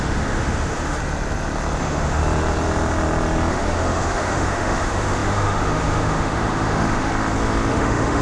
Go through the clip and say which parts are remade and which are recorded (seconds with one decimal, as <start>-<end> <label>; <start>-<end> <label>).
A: 0.0-1.0 remade; 1.0-1.8 recorded; 1.8-2.2 remade; 2.2-3.5 recorded; 3.5-7.1 remade; 7.1-7.7 recorded; 7.7-8.2 remade